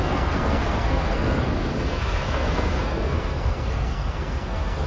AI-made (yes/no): yes